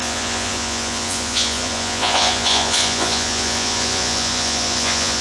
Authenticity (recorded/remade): remade